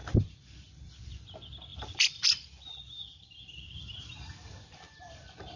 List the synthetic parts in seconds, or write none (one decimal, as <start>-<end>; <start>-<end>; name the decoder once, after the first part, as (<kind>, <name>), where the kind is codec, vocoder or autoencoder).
0.6-5.6 (vocoder, BigVGAN v2)